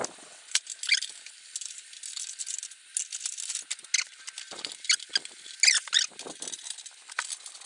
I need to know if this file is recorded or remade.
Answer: recorded